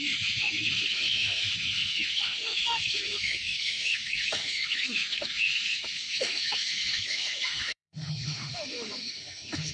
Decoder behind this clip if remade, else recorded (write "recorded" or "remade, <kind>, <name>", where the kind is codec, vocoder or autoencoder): remade, autoencoder, DAC-VAE